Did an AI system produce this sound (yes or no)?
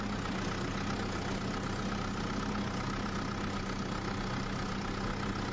no